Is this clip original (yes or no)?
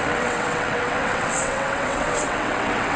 no